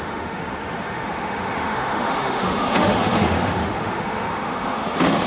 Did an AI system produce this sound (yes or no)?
yes